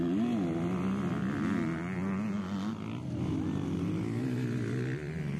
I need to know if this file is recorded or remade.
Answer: recorded